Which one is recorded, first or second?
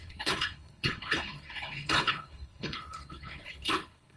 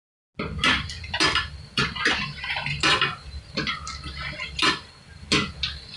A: second